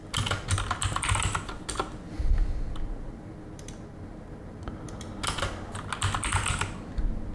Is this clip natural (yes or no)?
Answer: yes